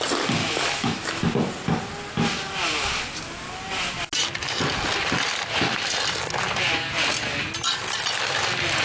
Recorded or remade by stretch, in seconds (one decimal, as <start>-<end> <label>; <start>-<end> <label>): 0.0-0.4 recorded; 0.4-1.2 remade; 1.2-8.8 recorded